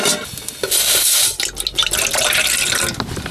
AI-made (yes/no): no